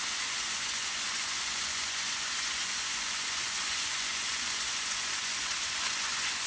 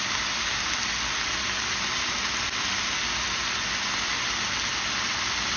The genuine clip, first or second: second